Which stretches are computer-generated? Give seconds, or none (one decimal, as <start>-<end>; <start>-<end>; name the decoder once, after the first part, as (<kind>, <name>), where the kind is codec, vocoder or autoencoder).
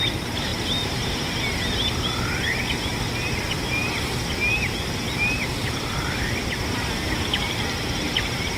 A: none